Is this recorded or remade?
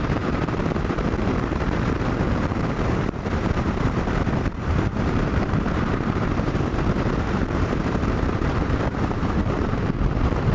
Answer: remade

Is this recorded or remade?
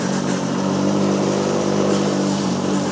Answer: remade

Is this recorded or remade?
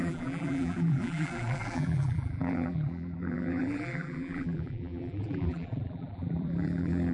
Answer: remade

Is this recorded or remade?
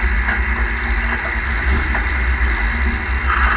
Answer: recorded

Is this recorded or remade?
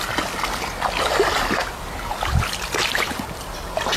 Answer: recorded